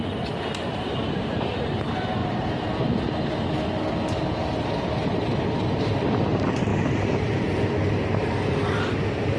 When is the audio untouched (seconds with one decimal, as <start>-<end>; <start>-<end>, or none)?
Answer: 0.0-2.2; 2.7-6.7; 7.3-9.4